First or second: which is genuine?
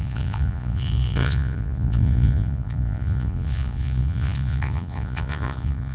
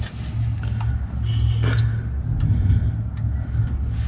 second